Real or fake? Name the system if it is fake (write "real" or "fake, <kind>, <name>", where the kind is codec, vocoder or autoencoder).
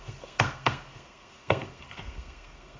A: fake, codec, SNAC